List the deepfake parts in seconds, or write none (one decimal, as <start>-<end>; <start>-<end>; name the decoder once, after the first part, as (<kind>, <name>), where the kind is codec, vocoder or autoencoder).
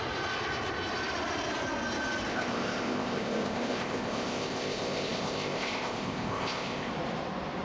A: 2.3-6.9 (codec, ZipCodec)